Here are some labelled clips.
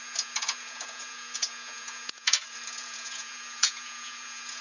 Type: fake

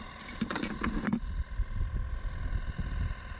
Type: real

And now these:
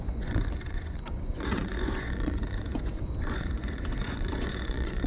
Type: fake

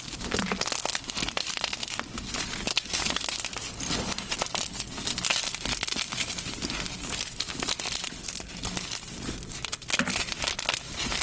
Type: real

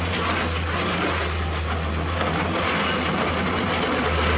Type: real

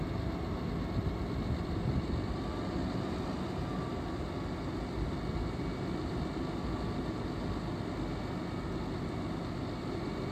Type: real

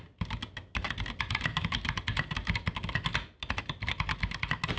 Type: real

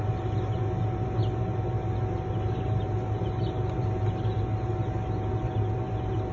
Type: real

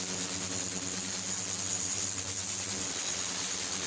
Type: real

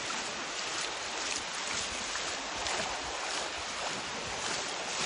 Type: real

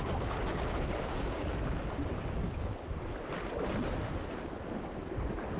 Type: real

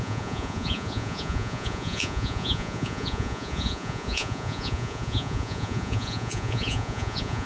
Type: fake